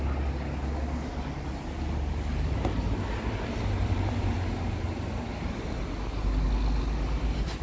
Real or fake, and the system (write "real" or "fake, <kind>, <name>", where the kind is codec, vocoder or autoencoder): real